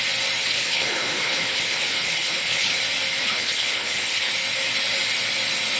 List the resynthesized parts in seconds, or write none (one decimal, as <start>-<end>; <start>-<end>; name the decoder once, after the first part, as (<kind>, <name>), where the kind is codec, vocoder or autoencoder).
0.5-2.8 (codec, HILCodec); 3.2-4.3